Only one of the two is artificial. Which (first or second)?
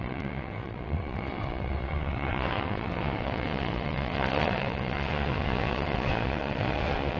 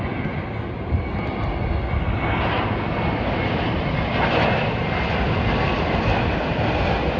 first